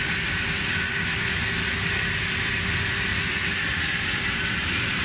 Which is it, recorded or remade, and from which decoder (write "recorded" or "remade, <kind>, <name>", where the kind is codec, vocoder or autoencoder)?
recorded